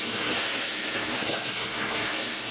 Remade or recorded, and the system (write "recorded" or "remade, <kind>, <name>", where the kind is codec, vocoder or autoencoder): remade, codec, SNAC